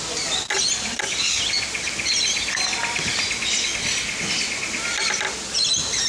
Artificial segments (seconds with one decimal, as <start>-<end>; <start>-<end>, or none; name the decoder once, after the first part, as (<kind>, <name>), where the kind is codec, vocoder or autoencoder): none